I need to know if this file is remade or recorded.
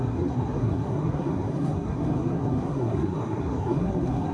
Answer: remade